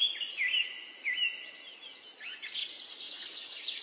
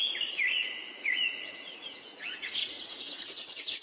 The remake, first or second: second